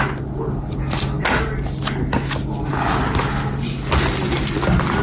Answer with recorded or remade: recorded